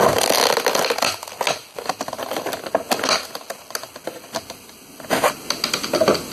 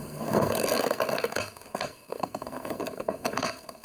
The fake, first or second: second